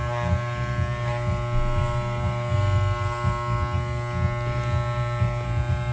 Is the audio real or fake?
real